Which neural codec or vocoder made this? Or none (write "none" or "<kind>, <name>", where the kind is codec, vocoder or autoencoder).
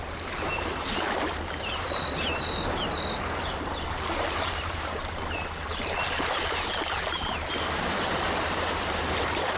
vocoder, BigVGAN v2